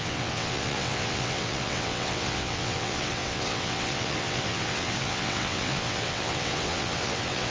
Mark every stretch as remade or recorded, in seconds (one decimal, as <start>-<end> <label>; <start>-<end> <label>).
0.0-7.5 remade